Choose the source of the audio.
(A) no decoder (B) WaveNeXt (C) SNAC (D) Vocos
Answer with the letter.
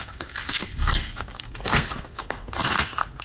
C